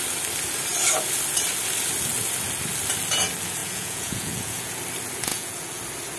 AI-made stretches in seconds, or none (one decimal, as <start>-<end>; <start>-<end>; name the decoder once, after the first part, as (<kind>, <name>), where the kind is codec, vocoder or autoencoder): 3.6-4.7 (vocoder, Vocos); 5.3-5.8